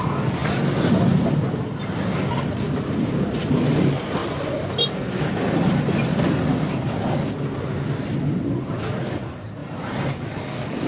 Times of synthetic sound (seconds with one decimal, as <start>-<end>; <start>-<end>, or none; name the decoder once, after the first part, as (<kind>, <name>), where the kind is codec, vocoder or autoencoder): 4.2-7.3 (vocoder, BigVGAN v2); 9.6-10.4